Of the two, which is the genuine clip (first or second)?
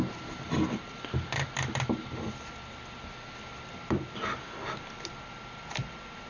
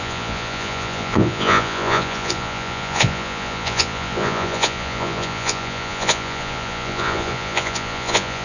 first